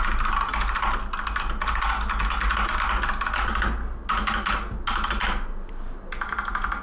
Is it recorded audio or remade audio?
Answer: recorded